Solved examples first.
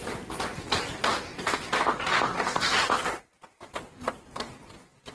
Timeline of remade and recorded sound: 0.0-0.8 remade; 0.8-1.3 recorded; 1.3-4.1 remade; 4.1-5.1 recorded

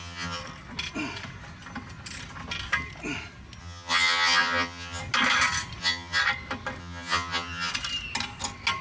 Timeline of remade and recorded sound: 0.0-0.4 remade; 0.4-3.6 recorded; 3.6-5.0 remade; 5.0-5.8 recorded; 5.8-6.2 remade; 6.2-6.8 recorded; 6.8-7.7 remade; 7.7-8.8 recorded

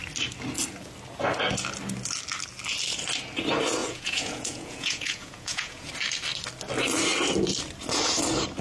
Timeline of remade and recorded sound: 0.0-3.8 recorded; 3.8-5.9 remade; 5.9-8.6 recorded

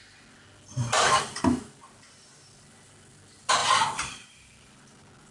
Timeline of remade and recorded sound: 0.0-3.6 recorded; 3.6-4.8 remade; 4.8-5.3 recorded

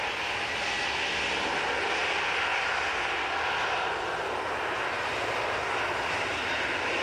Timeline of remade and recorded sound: 0.0-7.0 recorded

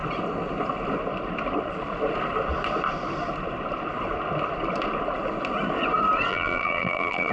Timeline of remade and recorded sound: 0.0-6.3 recorded; 6.3-7.3 remade

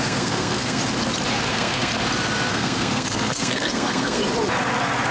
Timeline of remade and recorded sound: 0.0-0.8 remade; 0.8-1.5 recorded; 1.5-1.9 remade; 1.9-2.5 recorded; 2.5-4.2 remade; 4.2-5.1 recorded